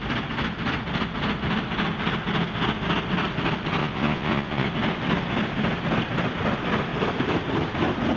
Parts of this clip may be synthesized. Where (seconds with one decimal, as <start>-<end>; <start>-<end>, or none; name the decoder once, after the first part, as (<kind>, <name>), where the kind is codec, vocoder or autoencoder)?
3.8-4.7 (vocoder, Vocos)